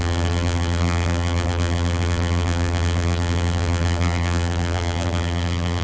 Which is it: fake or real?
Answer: fake